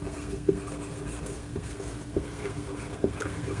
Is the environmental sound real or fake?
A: fake